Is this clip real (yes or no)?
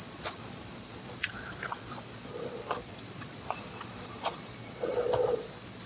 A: no